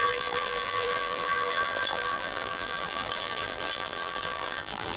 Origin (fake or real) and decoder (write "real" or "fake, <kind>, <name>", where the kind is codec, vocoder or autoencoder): fake, vocoder, BigVGAN v2